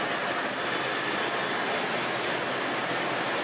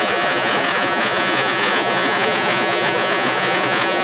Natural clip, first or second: first